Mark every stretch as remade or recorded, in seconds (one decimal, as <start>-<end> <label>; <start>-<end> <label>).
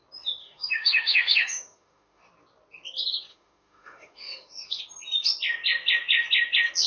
0.0-0.4 recorded; 0.4-2.2 remade; 2.2-3.3 recorded; 3.3-4.8 remade; 4.8-6.9 recorded